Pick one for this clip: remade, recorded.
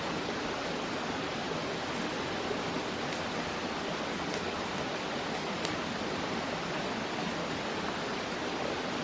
recorded